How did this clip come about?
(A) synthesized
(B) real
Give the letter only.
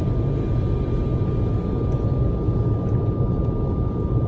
B